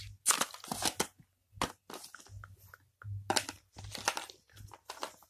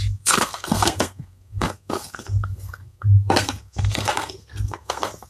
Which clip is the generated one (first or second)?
second